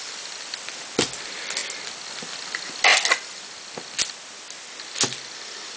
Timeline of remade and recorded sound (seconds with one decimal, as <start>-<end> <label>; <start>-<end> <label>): 0.0-5.8 recorded

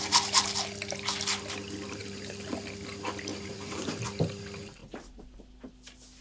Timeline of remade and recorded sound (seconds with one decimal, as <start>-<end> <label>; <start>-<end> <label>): 0.0-2.0 recorded; 2.0-2.5 remade; 2.5-3.3 recorded; 3.3-4.0 remade; 4.0-4.8 recorded; 4.8-5.4 remade; 5.4-6.2 recorded

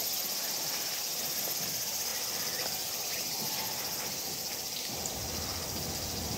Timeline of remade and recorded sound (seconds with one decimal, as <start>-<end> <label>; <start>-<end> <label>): 0.0-6.4 recorded

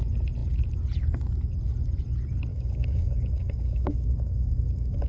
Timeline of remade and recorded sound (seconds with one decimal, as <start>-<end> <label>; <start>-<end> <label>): 0.0-2.5 recorded; 2.5-5.1 remade

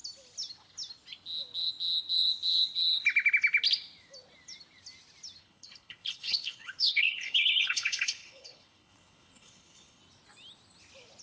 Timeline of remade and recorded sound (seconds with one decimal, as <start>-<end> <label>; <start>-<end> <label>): 0.0-5.4 recorded; 5.4-10.0 remade; 10.0-11.2 recorded

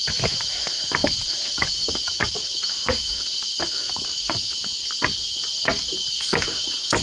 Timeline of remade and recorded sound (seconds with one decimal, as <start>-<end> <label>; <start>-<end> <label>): 0.0-4.7 remade; 4.7-6.1 recorded; 6.1-7.0 remade